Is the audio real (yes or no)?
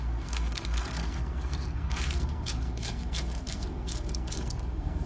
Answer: no